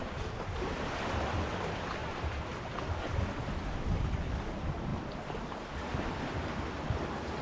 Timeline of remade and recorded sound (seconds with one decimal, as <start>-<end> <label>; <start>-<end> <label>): 0.0-7.4 recorded